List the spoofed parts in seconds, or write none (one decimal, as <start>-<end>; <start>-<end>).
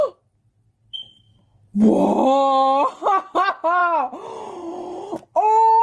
none